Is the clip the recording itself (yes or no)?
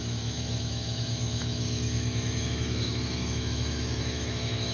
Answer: no